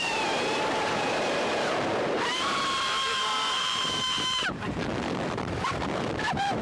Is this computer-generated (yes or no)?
yes